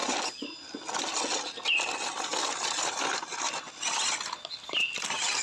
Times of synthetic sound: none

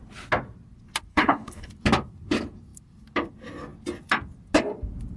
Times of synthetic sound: 1.1-1.7 (codec, HILCodec)